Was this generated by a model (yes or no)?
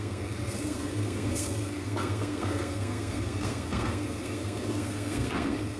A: yes